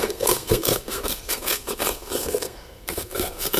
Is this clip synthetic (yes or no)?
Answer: yes